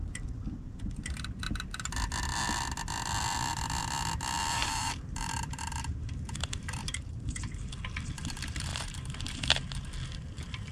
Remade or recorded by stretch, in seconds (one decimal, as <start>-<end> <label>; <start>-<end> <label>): 0.0-4.6 recorded; 4.6-7.7 remade; 7.7-8.7 recorded; 8.7-9.2 remade; 9.2-10.7 recorded